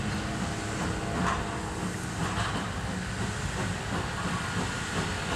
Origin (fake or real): real